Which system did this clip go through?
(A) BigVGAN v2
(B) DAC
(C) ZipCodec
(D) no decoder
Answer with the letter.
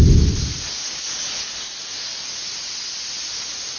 D